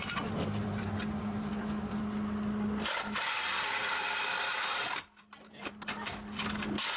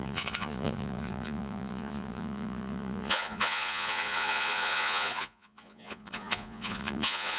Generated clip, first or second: second